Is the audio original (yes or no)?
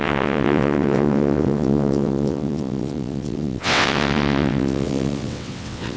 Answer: no